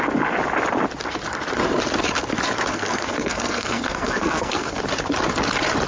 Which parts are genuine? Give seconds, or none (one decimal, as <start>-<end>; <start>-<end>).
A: 0.0-2.7; 4.8-5.9